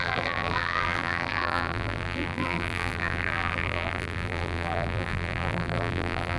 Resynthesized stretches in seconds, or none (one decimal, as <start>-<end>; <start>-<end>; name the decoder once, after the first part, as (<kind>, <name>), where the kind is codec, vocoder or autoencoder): 0.0-6.4 (vocoder, BigVGAN v2)